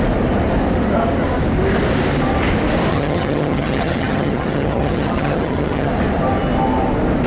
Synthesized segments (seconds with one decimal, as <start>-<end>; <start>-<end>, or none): 2.9-5.9